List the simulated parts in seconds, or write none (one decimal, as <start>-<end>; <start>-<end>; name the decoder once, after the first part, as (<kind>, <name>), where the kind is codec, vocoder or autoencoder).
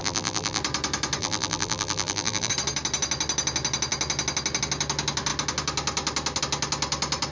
0.0-0.6 (vocoder, BigVGAN v2); 1.2-2.5